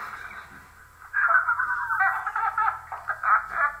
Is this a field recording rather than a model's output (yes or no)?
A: yes